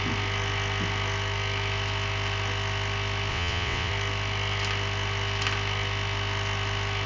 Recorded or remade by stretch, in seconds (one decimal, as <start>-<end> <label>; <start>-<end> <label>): 0.0-3.3 recorded; 3.3-3.9 remade; 3.9-7.1 recorded